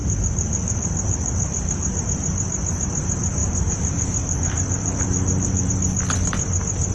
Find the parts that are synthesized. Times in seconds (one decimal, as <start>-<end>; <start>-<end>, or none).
0.0-2.0; 3.4-5.7